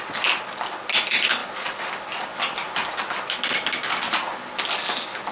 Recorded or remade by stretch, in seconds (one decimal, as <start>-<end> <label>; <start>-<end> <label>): 0.0-5.3 recorded